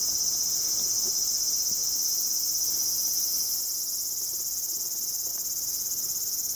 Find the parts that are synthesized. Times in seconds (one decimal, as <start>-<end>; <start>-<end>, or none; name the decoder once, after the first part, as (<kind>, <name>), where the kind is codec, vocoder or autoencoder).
none